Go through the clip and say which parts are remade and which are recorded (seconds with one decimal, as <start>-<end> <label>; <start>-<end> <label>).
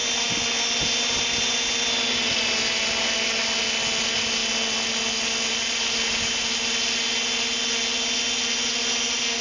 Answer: 0.0-9.4 recorded